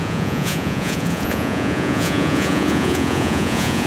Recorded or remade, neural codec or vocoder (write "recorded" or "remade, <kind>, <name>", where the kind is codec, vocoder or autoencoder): remade, vocoder, Vocos